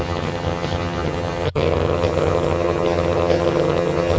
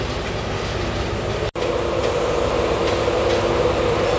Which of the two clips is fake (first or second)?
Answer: first